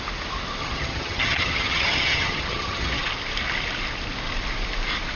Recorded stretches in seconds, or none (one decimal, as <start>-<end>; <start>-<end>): 0.0-0.6; 3.0-5.2